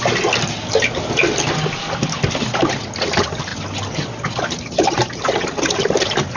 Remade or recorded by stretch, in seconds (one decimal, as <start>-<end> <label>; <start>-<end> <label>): 0.0-6.4 recorded